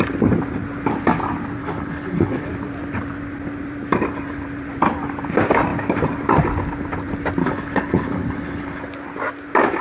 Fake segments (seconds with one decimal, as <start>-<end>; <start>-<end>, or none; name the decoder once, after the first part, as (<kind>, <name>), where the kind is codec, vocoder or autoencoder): 1.6-2.5 (codec, HILCodec); 7.4-8.8